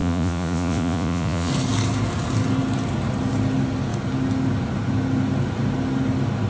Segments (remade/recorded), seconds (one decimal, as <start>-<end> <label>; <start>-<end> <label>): 0.0-1.5 remade; 1.5-6.5 recorded